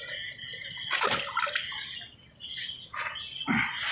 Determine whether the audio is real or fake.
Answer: real